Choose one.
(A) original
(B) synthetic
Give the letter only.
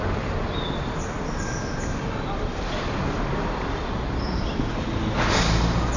A